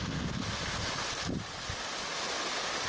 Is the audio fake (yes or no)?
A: no